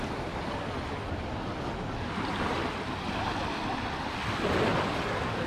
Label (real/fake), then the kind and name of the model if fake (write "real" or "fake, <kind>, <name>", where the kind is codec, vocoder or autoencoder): real